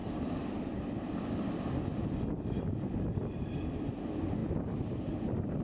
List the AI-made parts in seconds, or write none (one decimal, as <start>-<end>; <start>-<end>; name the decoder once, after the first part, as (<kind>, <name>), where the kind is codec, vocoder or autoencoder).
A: 0.0-3.4 (vocoder, BigVGAN v2); 4.4-5.0